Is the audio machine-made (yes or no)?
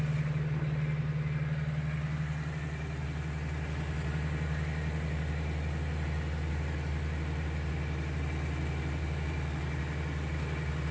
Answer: no